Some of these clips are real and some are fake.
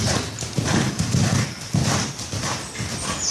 real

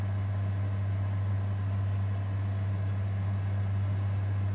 real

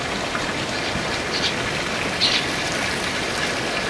real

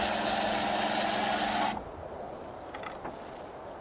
real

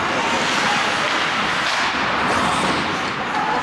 real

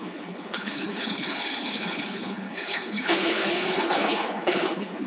fake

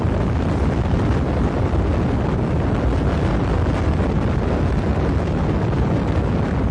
real